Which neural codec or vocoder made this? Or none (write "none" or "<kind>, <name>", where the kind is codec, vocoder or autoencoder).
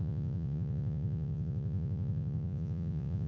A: vocoder, Vocos